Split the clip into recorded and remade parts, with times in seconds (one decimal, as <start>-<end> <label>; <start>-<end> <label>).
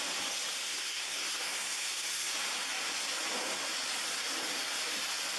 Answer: 0.0-0.7 recorded; 0.7-2.3 remade; 2.3-5.4 recorded